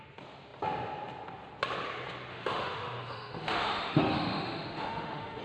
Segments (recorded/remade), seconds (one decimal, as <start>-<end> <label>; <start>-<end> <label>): 0.0-2.3 recorded; 2.3-5.4 remade